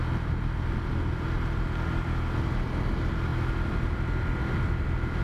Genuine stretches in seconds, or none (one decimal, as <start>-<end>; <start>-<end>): 0.0-5.2